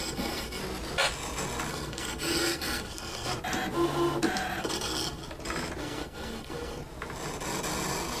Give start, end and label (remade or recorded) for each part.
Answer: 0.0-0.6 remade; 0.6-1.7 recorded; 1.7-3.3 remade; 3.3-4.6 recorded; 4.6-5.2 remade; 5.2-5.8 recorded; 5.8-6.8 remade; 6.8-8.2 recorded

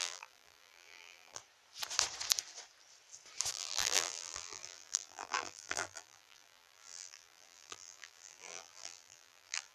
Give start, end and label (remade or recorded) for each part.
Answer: 0.0-1.4 remade; 1.4-3.5 recorded; 3.5-9.7 remade